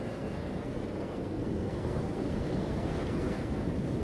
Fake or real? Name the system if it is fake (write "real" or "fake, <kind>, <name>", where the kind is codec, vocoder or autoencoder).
fake, codec, SNAC